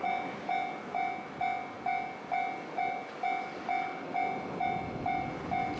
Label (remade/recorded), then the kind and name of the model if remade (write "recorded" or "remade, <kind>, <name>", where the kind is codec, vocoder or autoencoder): recorded